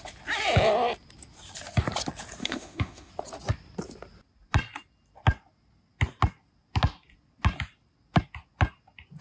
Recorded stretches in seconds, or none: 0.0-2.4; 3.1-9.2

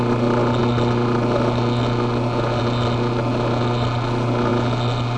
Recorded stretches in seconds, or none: 0.0-5.2

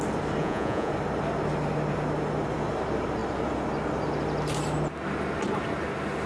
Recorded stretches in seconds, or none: 0.0-0.4; 0.9-6.3

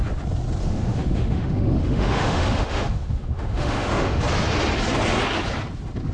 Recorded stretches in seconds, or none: 0.0-0.6; 4.2-6.1

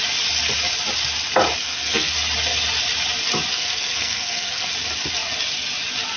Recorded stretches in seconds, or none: 0.0-1.6; 2.1-3.5; 4.7-6.2

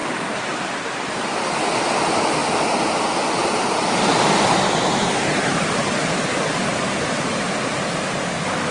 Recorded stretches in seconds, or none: 1.5-3.4; 8.2-8.7

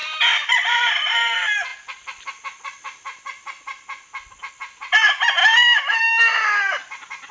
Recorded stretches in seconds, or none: 0.0-7.3

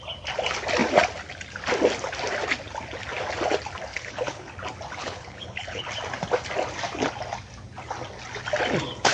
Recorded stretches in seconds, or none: 0.0-3.9; 4.5-5.0; 5.9-9.1